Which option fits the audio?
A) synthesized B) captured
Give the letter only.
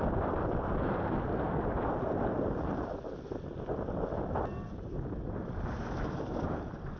B